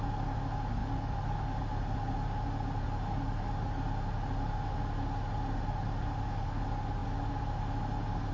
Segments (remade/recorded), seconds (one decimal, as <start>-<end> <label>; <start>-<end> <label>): 0.0-8.3 recorded